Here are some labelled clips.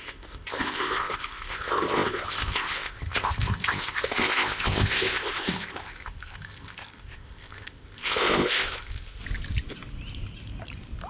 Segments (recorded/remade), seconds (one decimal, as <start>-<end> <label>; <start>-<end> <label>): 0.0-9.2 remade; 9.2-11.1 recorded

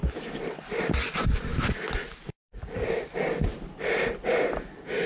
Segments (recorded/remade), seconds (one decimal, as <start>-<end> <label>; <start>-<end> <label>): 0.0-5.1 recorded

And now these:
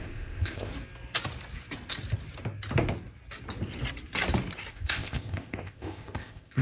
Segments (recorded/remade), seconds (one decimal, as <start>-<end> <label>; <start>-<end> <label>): 0.0-0.7 remade; 0.7-4.7 recorded; 4.7-6.6 remade